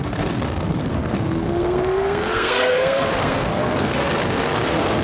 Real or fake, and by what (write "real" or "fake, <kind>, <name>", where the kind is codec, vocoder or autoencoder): fake, codec, SNAC